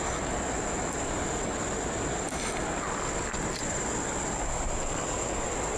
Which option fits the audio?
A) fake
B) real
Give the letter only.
B